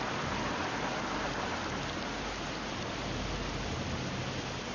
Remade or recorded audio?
recorded